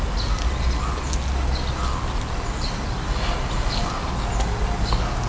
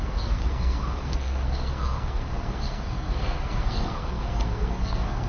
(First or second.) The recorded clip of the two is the first